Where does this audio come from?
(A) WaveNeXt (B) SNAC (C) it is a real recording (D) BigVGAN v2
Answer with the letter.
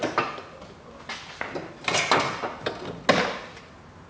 C